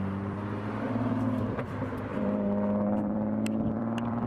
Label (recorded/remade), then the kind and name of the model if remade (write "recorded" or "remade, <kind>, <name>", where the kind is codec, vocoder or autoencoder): remade, vocoder, BigVGAN v2